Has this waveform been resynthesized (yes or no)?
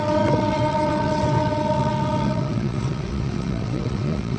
yes